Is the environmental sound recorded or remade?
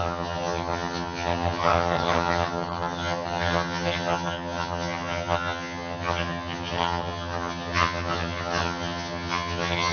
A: remade